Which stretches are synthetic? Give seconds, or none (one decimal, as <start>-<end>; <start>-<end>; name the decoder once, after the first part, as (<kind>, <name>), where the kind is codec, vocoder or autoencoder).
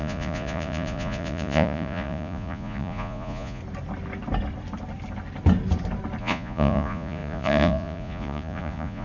0.0-3.6 (vocoder, Vocos); 6.2-9.0